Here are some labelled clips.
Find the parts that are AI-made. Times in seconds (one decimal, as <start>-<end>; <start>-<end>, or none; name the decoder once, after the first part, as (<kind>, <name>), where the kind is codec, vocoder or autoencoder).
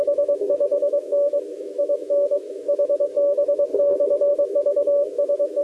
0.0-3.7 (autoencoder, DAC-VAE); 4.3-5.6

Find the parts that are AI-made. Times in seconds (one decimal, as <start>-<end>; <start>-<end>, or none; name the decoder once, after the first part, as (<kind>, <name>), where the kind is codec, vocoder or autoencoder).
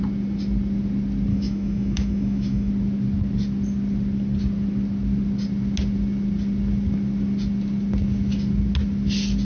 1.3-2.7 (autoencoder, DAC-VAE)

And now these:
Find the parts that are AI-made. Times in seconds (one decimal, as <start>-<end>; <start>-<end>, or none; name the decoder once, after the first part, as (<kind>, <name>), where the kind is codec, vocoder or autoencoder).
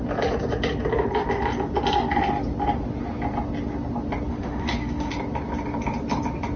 4.3-5.1 (autoencoder, DAC-VAE)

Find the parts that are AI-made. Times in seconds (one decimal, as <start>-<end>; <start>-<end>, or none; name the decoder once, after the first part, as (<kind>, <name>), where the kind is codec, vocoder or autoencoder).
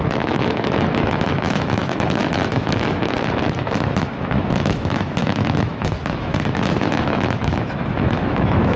0.0-8.8 (autoencoder, DAC-VAE)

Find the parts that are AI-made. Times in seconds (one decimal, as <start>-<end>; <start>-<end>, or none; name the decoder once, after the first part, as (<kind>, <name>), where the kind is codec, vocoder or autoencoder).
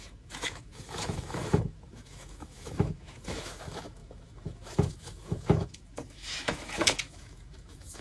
0.0-8.0 (autoencoder, DAC-VAE)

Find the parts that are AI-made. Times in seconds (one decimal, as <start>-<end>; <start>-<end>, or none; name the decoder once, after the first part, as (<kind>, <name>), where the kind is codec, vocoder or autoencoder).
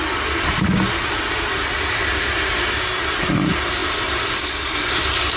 none